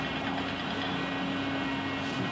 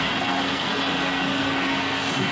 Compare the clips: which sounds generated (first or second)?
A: second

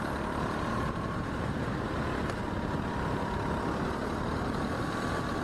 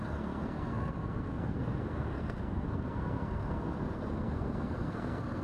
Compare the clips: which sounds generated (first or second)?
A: second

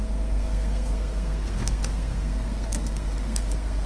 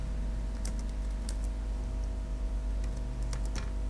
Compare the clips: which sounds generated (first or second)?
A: first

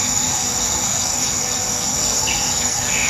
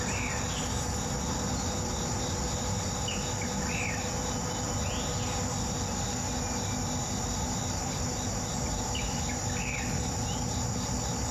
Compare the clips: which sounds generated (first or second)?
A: first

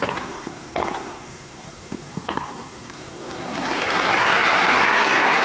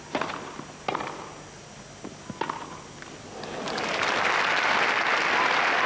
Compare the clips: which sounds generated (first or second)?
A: first